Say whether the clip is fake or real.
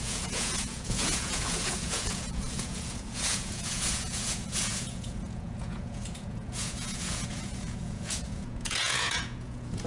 fake